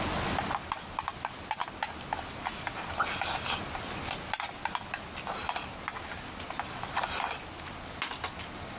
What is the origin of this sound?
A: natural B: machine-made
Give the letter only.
A